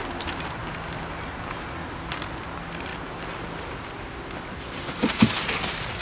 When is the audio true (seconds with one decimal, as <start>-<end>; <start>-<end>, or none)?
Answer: 0.0-6.0